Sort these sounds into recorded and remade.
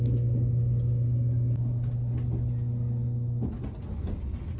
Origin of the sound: recorded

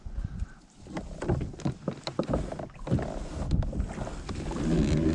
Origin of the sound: recorded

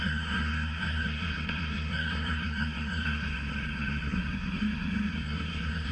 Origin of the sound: remade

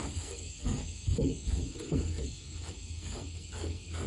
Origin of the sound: remade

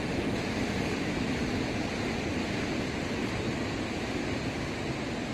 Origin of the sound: recorded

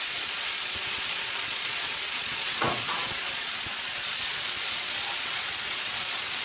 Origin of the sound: remade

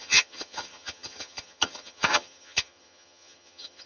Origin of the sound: remade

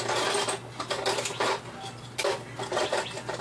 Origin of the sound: recorded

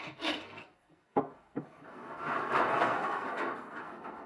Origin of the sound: remade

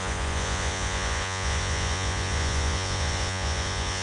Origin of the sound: remade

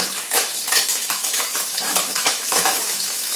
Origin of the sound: remade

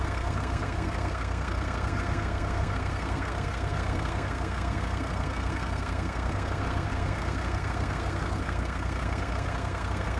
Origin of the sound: remade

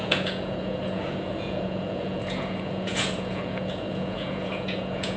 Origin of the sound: remade